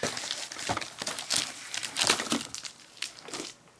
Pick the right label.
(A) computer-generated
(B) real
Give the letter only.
B